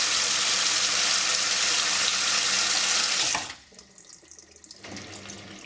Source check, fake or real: real